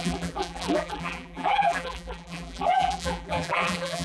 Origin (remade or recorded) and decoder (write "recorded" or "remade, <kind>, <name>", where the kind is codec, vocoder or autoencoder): remade, vocoder, BigVGAN v2